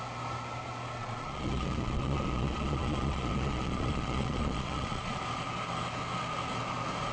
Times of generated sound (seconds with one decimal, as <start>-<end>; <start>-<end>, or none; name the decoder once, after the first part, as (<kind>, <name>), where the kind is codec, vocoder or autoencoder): 1.0-5.2 (vocoder, Vocos)

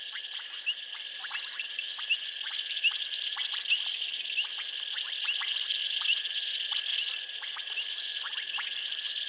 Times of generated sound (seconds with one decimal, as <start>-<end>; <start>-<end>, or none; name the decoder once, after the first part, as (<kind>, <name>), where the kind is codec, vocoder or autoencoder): none

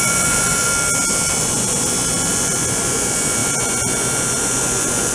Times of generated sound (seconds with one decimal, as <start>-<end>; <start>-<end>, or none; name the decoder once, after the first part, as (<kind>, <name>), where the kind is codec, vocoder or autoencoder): 0.0-0.7 (vocoder, Vocos); 1.4-5.1

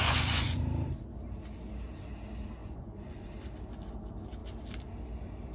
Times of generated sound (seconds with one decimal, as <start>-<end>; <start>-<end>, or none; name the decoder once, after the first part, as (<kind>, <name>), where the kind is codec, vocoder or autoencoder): 0.0-0.6 (vocoder, Vocos); 2.6-3.3